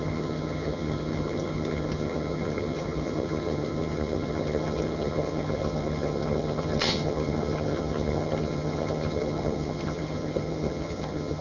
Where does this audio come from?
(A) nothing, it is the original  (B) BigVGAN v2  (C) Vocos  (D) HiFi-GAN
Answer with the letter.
D